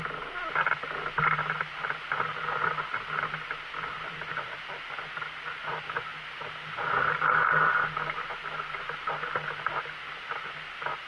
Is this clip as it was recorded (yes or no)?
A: yes